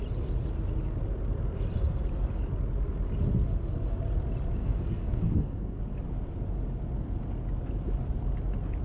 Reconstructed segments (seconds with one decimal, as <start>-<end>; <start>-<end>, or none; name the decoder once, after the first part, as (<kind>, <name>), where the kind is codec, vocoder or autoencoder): 4.6-5.8 (codec, SNAC)

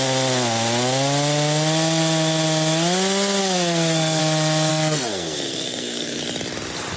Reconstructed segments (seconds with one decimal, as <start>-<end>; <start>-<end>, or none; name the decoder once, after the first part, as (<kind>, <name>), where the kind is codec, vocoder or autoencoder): 3.4-4.2 (codec, SNAC); 4.7-6.2

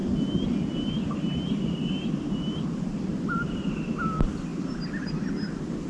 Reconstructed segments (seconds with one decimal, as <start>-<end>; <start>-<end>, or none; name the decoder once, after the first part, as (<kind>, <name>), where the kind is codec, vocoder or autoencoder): none

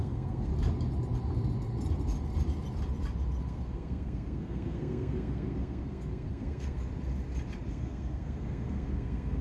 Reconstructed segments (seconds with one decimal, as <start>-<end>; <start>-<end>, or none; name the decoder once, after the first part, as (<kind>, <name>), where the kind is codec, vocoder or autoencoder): 0.0-0.5 (codec, SNAC); 3.4-6.9; 7.7-9.4

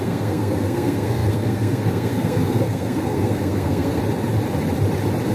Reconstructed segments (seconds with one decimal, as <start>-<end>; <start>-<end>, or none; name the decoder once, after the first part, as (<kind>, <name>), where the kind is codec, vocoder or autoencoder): 0.0-4.0 (codec, SNAC)

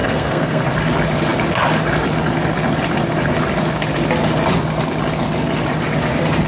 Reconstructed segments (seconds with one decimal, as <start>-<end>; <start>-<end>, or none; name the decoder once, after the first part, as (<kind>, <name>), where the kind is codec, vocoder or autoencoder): 0.0-0.6 (codec, SNAC)

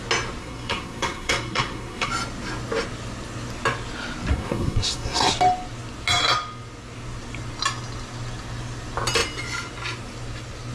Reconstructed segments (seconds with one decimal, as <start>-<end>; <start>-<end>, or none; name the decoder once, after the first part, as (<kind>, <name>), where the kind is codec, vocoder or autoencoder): 0.4-2.1 (codec, SNAC); 4.3-5.3